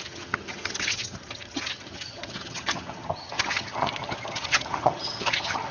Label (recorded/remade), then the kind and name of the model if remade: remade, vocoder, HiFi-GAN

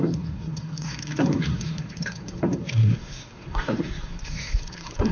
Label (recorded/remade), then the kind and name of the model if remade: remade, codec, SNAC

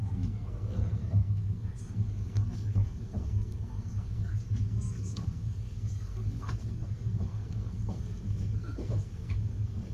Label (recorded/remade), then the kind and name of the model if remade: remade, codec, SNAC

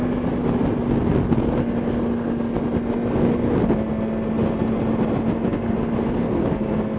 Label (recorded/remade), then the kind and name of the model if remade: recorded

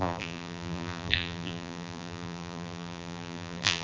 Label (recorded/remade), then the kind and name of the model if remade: remade, vocoder, BigVGAN v2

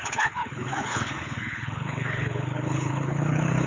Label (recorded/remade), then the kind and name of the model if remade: remade, codec, HILCodec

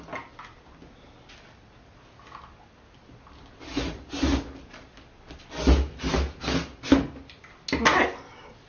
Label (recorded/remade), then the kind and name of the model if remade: recorded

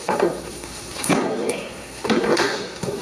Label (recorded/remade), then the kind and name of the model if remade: remade, codec, SNAC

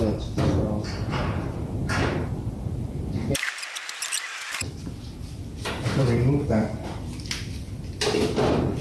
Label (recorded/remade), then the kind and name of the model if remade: remade, vocoder, BigVGAN v2